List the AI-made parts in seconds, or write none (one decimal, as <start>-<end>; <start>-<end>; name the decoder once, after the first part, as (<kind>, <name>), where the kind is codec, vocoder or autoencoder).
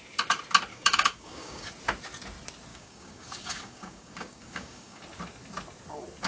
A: 0.7-1.7 (codec, DAC); 2.7-5.0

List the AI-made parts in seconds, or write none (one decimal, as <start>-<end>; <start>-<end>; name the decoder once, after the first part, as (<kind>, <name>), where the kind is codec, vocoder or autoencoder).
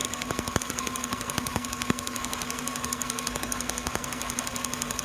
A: 0.0-5.0 (codec, SNAC)